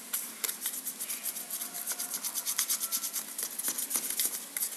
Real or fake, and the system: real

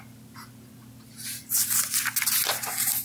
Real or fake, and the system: real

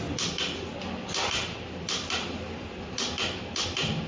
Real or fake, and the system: real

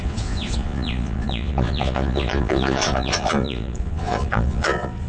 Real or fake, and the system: fake, vocoder, Vocos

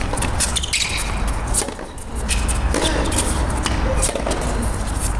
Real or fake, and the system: real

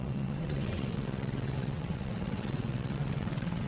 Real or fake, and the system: fake, vocoder, WaveNeXt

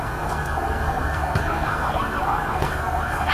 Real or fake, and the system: fake, codec, SNAC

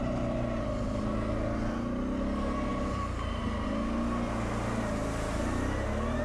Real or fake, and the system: real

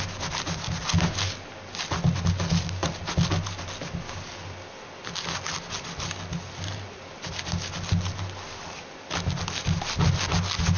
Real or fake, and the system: real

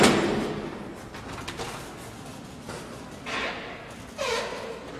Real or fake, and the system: real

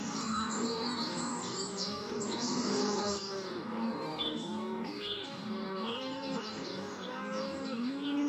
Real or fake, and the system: fake, codec, DAC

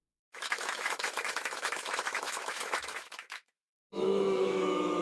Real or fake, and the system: fake, autoencoder, DAC-VAE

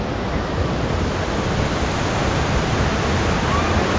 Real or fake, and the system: real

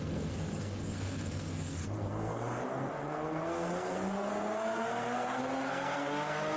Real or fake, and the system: fake, codec, SNAC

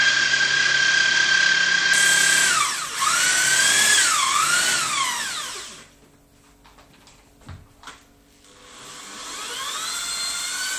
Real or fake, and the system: real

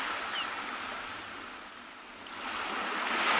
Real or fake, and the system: real